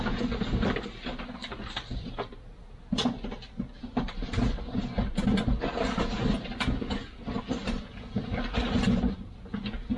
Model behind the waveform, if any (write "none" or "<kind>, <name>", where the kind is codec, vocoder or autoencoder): none